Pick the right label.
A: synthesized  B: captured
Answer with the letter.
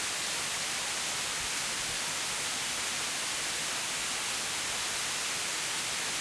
B